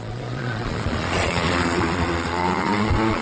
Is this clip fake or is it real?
fake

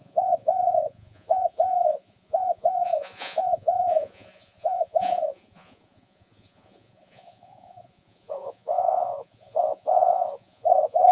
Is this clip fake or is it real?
fake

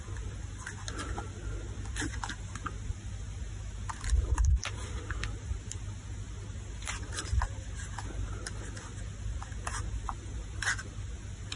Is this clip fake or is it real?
real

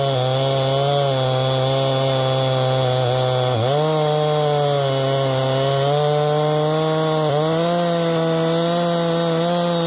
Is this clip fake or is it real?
real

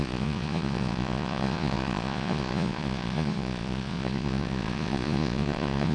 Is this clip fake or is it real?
fake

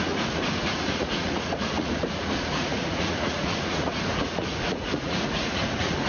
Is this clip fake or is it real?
fake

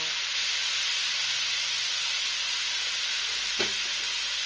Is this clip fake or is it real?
real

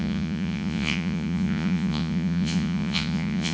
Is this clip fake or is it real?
fake